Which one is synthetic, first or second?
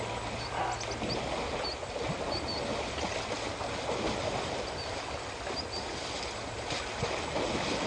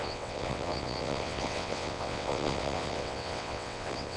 second